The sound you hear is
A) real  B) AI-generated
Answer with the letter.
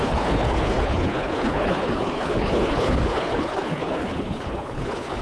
B